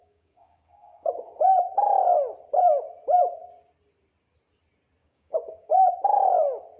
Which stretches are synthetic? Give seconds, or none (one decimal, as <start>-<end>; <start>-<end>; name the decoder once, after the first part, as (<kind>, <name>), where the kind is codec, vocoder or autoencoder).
0.0-1.2 (codec, DAC); 5.0-5.9